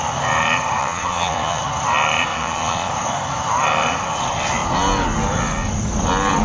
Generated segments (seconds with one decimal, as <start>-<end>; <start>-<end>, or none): 0.8-1.6; 2.3-2.9